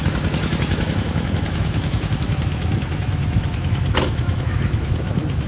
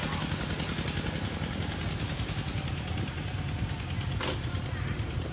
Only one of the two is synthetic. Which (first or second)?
first